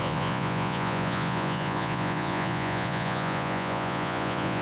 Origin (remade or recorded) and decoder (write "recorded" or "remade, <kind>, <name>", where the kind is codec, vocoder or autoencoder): remade, vocoder, Vocos